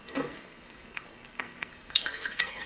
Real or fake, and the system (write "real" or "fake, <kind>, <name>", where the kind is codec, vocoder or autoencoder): fake, codec, SNAC